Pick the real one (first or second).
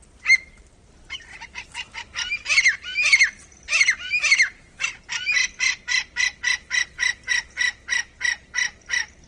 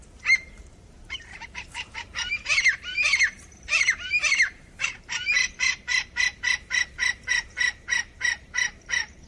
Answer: first